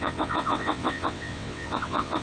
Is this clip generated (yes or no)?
yes